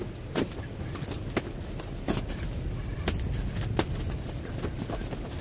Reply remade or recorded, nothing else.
recorded